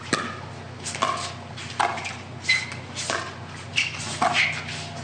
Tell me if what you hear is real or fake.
real